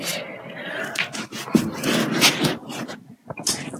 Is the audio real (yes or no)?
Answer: yes